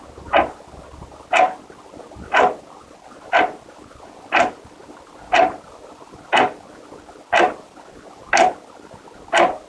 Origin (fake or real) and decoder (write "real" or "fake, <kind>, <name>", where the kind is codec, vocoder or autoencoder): real